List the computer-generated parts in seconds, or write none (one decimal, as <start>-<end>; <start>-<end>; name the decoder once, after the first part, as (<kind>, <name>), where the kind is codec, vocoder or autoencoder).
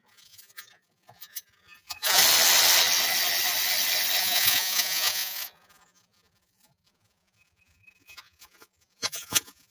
0.0-2.2 (vocoder, Vocos); 4.2-9.7